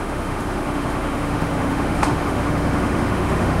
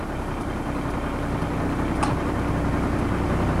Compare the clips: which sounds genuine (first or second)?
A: second